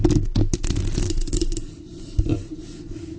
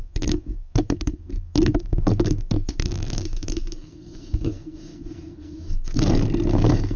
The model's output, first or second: second